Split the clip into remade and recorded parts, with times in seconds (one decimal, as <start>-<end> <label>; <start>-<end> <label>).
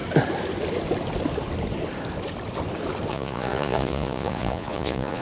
0.0-3.1 recorded; 3.1-5.2 remade